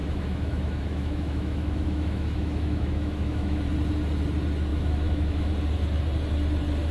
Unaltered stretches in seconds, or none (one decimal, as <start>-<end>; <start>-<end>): 3.6-4.7; 5.5-6.9